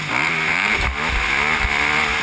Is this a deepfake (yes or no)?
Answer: no